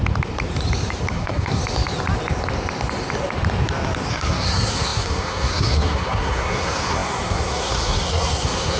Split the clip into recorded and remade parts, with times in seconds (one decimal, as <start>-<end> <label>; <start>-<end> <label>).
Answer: 0.0-1.1 recorded; 1.1-1.6 remade; 1.6-4.1 recorded; 4.1-8.8 remade

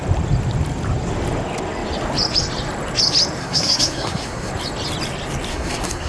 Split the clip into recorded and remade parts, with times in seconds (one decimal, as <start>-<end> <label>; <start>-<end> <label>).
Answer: 0.0-3.4 recorded; 3.4-4.5 remade; 4.5-5.5 recorded; 5.5-6.1 remade

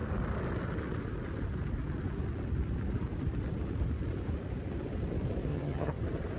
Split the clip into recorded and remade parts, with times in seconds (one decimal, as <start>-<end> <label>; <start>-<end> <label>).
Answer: 0.0-5.5 recorded; 5.5-6.0 remade; 6.0-6.4 recorded